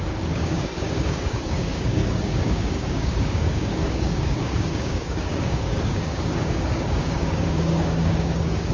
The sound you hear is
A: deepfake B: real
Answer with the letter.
A